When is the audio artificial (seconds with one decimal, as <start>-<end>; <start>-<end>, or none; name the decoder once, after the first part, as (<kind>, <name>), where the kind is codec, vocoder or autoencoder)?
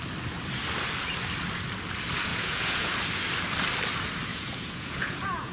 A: 2.3-2.9 (vocoder, Vocos); 4.3-5.5